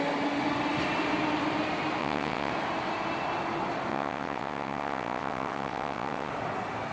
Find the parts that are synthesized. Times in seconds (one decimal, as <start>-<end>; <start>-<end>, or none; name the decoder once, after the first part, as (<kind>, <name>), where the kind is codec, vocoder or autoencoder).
2.0-2.5 (vocoder, WaveNeXt); 3.9-6.3